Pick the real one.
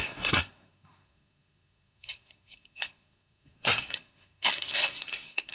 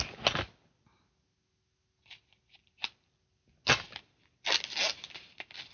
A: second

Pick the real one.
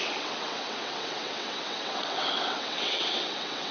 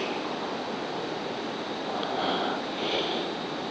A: second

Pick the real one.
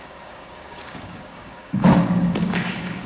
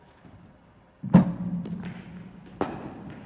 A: second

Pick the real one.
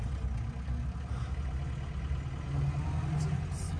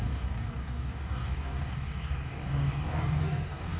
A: first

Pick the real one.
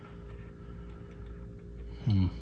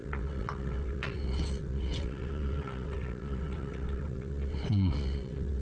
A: first